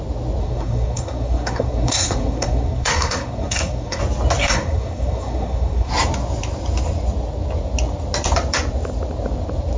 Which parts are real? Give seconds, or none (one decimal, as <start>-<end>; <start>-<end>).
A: 0.0-0.4; 4.0-4.4; 5.9-9.8